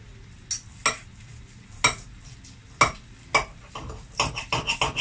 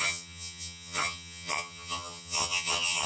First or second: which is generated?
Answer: second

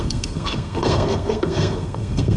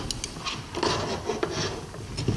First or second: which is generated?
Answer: first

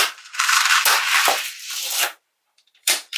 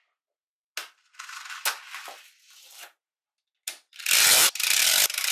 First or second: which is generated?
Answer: first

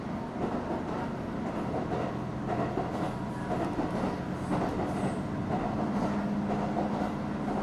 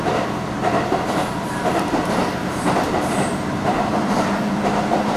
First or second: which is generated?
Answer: second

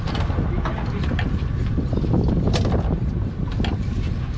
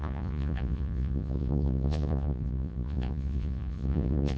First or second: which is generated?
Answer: second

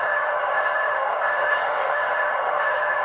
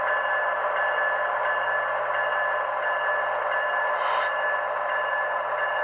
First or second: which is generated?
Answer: first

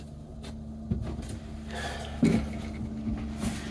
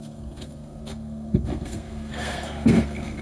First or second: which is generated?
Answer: second